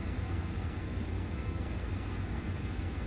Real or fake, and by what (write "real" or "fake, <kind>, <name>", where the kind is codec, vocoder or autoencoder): fake, codec, SNAC